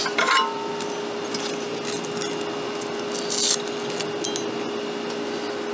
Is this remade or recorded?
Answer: recorded